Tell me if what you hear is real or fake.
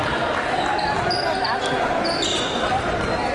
real